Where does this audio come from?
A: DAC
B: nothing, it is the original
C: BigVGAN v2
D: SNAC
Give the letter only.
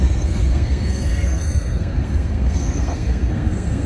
D